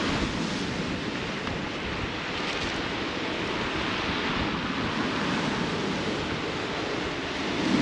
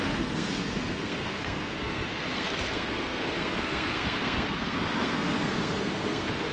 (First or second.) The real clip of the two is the first